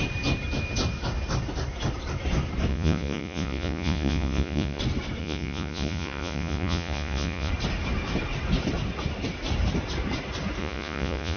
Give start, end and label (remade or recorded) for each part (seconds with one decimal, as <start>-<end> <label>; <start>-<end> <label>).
0.0-2.7 recorded; 2.7-4.8 remade; 4.8-5.2 recorded; 5.2-7.5 remade; 7.5-10.6 recorded; 10.6-11.4 remade